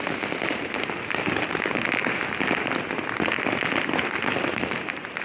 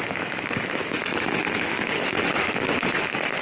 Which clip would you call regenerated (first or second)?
second